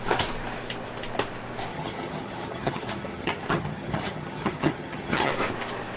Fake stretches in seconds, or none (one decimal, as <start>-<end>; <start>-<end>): 1.7-5.3